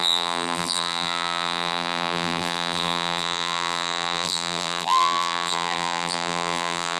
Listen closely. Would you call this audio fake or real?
fake